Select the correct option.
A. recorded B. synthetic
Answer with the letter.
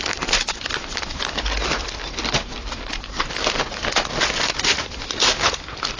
A